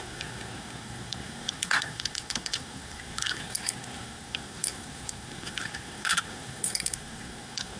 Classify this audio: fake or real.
fake